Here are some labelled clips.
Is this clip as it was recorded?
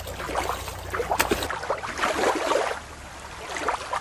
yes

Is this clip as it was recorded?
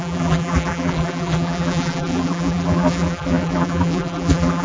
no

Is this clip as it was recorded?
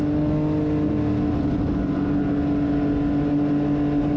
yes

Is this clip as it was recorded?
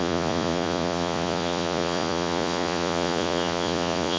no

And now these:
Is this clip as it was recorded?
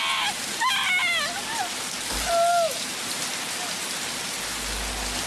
yes